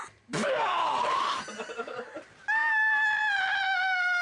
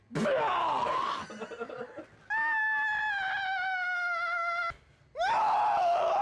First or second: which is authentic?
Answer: second